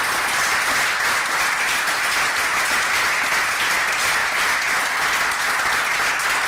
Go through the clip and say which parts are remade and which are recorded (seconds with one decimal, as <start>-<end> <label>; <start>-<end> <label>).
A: 0.0-6.5 recorded